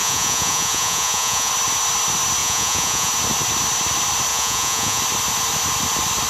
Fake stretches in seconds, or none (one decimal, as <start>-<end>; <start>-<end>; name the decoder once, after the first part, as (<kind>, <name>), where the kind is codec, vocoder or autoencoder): 0.0-1.5 (vocoder, Vocos); 2.4-3.1; 4.3-5.0